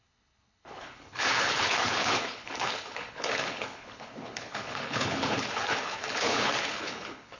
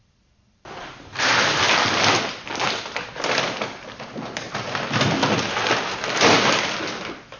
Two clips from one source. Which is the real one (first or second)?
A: second